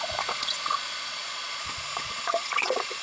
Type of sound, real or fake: fake